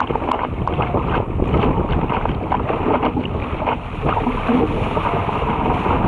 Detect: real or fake real